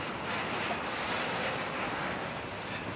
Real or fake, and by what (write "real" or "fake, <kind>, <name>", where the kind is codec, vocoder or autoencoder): real